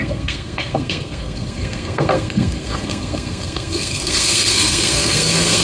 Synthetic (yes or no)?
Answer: yes